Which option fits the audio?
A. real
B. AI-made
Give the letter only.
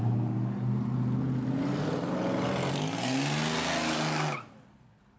A